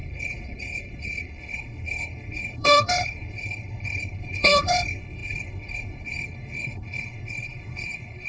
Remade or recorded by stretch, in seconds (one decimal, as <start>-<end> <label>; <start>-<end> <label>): 0.0-8.3 remade